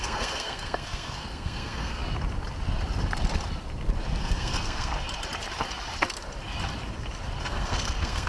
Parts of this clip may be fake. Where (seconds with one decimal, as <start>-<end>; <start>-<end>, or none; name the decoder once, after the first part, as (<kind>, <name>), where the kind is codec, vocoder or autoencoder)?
0.0-2.0 (codec, SNAC); 4.2-4.9; 7.4-8.3